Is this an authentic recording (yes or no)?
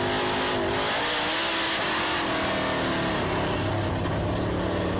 yes